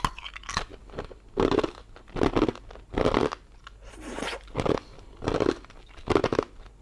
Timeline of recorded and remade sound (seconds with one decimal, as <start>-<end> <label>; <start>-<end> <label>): 0.0-6.8 recorded